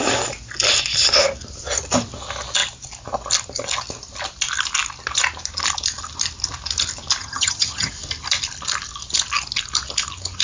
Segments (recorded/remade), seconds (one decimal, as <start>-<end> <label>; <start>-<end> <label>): 0.0-7.2 recorded; 7.2-7.9 remade; 7.9-10.4 recorded